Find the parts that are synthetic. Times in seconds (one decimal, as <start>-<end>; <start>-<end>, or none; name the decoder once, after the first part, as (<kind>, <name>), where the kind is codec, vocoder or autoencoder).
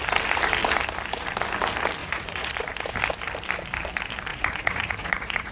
2.0-2.5 (vocoder, Vocos); 4.3-5.5